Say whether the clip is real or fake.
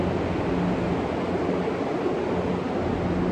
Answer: real